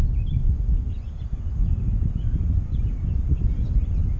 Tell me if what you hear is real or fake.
real